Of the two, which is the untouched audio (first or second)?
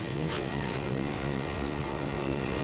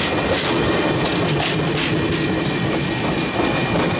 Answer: second